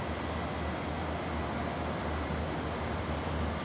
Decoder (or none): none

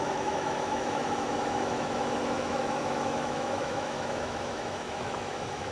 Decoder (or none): autoencoder, DAC-VAE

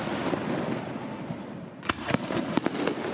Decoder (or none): none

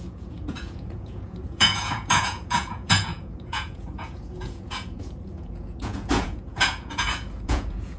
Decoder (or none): vocoder, Vocos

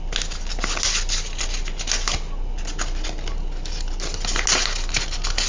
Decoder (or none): none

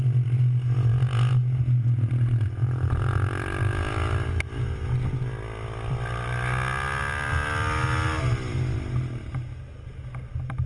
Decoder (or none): none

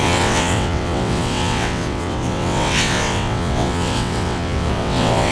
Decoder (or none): vocoder, WaveNeXt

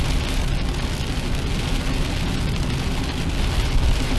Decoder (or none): none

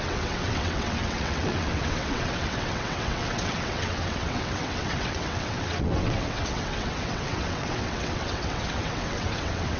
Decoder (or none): vocoder, WaveNeXt